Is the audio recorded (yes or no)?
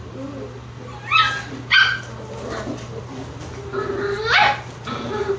yes